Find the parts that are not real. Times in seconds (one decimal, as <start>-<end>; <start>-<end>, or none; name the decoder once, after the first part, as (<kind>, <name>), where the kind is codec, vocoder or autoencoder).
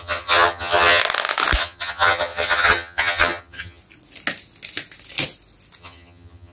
0.0-1.0 (vocoder, HiFi-GAN); 1.6-3.8; 5.8-6.5